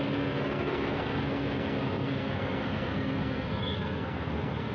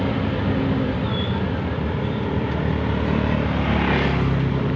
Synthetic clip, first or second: first